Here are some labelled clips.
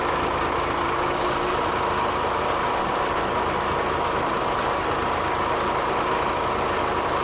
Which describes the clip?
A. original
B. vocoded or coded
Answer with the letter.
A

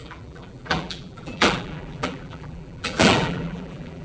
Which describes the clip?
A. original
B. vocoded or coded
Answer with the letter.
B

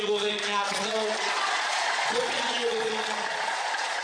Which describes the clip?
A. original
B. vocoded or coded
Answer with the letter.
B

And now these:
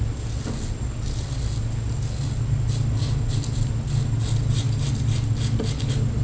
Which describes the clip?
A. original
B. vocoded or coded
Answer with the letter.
A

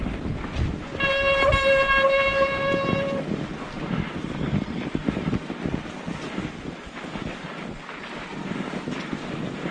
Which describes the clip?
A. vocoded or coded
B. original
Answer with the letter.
B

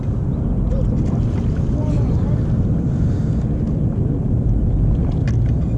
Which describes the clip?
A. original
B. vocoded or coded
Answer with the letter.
A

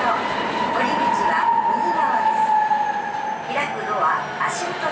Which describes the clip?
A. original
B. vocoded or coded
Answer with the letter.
A